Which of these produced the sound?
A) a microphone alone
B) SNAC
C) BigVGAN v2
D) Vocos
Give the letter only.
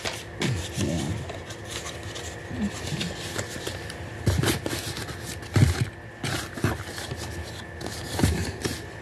A